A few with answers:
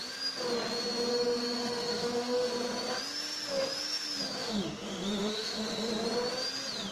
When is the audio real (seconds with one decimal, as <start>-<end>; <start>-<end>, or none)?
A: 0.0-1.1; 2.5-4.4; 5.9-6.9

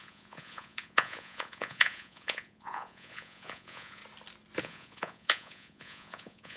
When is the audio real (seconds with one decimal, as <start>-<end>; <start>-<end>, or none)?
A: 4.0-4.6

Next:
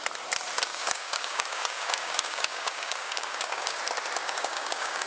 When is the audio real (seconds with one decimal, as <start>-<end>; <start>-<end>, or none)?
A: 0.0-0.7; 3.8-4.2

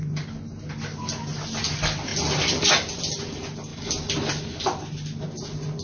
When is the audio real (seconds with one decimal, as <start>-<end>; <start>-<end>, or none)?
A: 0.0-5.8

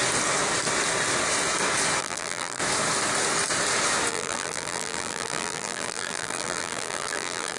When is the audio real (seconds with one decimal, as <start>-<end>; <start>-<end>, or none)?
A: 0.0-2.0; 2.6-4.1

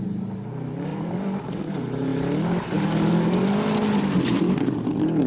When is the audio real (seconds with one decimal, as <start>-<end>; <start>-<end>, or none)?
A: 0.0-5.3

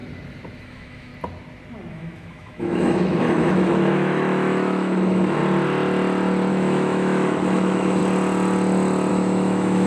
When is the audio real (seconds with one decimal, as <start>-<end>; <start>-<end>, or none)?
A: 0.0-0.6; 1.1-1.9; 5.4-6.5; 8.0-9.1

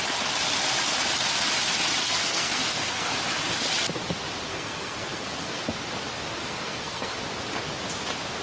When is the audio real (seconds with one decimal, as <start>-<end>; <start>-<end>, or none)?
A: 0.0-2.0; 3.1-4.5; 5.6-6.4; 7.1-8.4